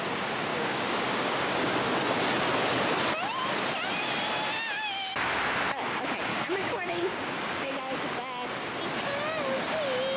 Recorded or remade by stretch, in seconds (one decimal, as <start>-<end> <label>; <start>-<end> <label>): 0.0-0.5 recorded; 0.5-1.4 remade; 1.4-6.3 recorded; 6.3-7.8 remade; 7.8-10.2 recorded

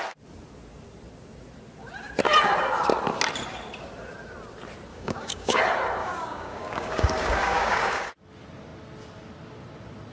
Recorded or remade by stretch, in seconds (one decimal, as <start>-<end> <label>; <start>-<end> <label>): 0.0-4.9 recorded; 4.9-5.6 remade; 5.6-6.0 recorded; 6.0-8.1 remade; 8.1-10.1 recorded

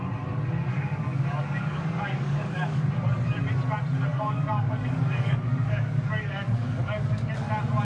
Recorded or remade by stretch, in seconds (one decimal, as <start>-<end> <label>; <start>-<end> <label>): 0.0-0.7 recorded; 0.7-2.9 remade; 2.9-4.1 recorded; 4.1-7.3 remade; 7.3-7.8 recorded

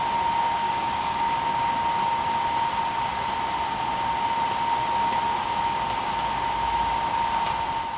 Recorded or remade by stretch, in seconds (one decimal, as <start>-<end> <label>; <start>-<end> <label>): 0.0-0.6 recorded; 0.6-1.3 remade; 1.3-8.0 recorded

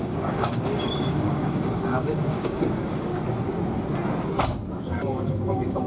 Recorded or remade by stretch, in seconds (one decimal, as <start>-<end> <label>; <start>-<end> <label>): 0.0-3.1 remade; 3.1-4.8 recorded; 4.8-5.9 remade

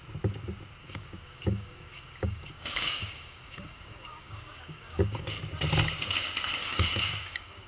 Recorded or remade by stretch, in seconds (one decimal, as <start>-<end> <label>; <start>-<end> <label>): 0.0-0.8 recorded; 0.8-5.4 remade; 5.4-6.6 recorded; 6.6-7.7 remade

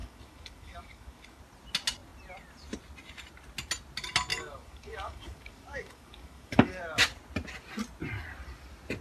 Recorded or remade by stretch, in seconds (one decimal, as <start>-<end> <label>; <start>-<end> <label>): 0.0-1.4 remade; 1.4-4.3 recorded; 4.3-6.8 remade; 6.8-9.0 recorded